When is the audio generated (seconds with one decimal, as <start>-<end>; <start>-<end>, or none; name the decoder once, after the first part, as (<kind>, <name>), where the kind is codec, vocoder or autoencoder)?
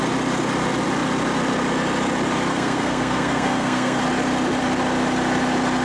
2.5-4.0 (codec, SNAC)